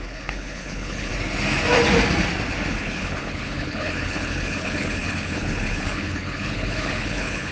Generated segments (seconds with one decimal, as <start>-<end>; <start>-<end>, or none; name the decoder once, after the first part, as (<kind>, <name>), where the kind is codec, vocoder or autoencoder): 0.0-1.1 (codec, HILCodec); 2.7-7.5